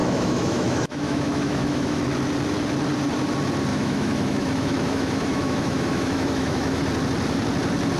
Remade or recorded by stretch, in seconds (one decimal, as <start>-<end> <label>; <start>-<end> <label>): 0.0-2.0 remade; 2.0-3.7 recorded; 3.7-6.8 remade; 6.8-8.0 recorded